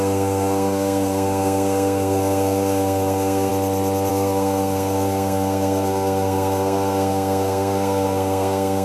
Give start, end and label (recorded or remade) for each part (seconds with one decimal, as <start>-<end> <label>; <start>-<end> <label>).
0.0-3.5 remade; 3.5-4.1 recorded; 4.1-8.8 remade